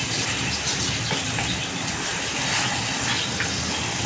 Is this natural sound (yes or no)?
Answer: yes